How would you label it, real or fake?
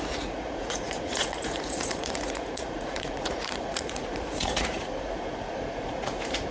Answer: fake